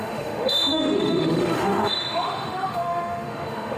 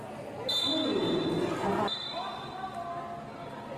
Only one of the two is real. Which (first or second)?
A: second